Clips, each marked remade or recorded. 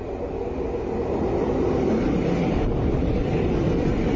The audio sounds recorded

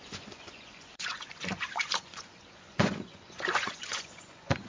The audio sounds remade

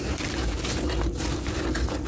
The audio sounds recorded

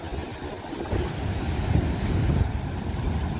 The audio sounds recorded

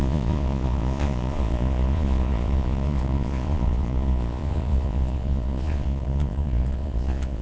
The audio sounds remade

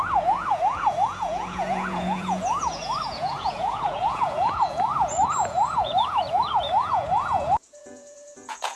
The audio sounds remade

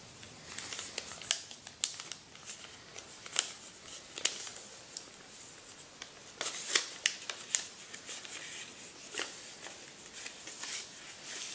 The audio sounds recorded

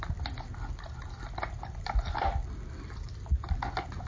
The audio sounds recorded